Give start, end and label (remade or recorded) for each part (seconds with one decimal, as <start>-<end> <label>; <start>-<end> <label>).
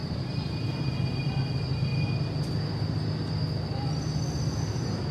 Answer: 0.0-1.3 remade; 1.3-5.1 recorded